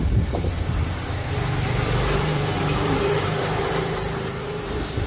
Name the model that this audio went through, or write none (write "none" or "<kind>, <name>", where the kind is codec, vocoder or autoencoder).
vocoder, BigVGAN v2